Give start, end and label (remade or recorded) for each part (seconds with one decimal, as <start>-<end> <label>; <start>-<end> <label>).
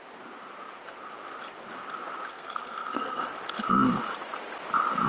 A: 0.0-2.3 recorded; 2.3-3.2 remade; 3.2-5.1 recorded